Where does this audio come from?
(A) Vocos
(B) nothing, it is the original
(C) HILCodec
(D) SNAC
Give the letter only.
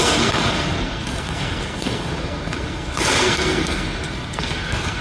D